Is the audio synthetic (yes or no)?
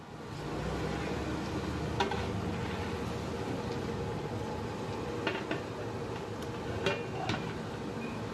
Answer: no